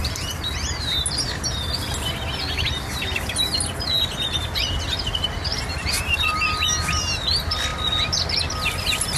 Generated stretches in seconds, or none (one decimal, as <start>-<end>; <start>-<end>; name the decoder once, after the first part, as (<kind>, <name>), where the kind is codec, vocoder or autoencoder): 5.5-6.5 (vocoder, BigVGAN v2)